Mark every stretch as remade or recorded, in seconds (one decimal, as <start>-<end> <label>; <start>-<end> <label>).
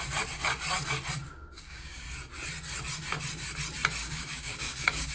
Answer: 0.0-1.3 recorded; 1.3-2.0 remade; 2.0-4.0 recorded; 4.0-5.1 remade